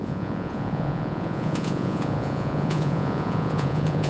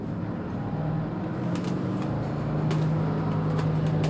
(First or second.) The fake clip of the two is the first